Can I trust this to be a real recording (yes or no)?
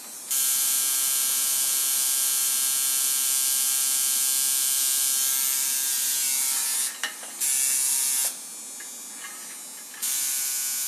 yes